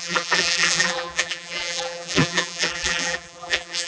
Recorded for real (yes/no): no